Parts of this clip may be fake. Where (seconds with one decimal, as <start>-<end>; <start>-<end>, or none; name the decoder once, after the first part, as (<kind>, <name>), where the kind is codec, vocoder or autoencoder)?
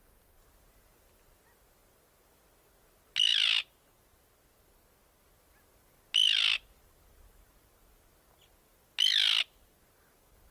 none